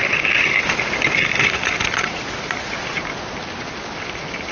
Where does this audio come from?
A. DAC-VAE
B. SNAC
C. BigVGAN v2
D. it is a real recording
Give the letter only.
D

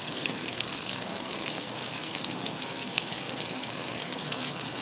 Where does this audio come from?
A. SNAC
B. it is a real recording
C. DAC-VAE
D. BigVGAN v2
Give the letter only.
A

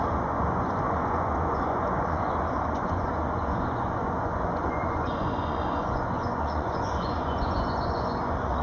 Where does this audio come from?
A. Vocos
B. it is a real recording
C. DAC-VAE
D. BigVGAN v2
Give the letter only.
A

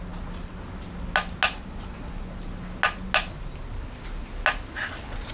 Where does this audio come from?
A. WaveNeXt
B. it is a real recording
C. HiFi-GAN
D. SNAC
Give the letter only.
B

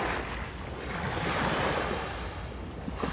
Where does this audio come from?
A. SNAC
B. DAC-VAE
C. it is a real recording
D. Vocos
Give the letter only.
C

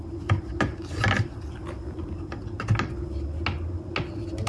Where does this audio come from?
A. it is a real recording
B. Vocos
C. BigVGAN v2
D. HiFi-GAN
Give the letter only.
A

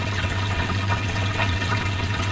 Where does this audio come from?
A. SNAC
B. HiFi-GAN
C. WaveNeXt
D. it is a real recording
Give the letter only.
C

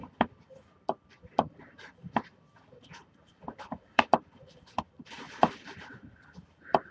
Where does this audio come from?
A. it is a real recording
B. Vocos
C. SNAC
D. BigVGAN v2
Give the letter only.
D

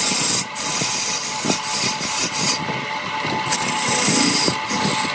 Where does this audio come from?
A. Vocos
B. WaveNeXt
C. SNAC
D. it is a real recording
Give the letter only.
D